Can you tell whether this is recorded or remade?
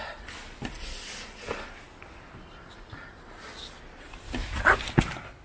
recorded